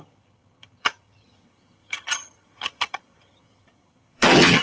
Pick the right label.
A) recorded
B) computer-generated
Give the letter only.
B